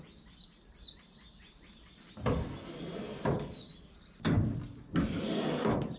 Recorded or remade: recorded